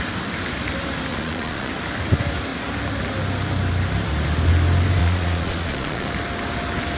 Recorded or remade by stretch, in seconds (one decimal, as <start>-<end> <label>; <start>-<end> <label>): 0.0-1.1 recorded; 1.1-1.7 remade; 1.7-5.0 recorded; 5.0-6.1 remade; 6.1-7.0 recorded